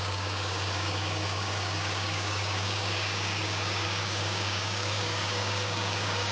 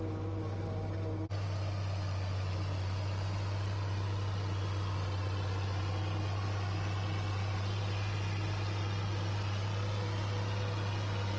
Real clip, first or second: second